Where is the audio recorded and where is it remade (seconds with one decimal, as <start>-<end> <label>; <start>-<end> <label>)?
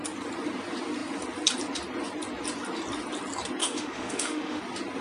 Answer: 0.0-3.6 recorded; 3.6-4.6 remade; 4.6-5.0 recorded